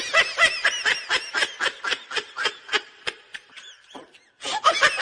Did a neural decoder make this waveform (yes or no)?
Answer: no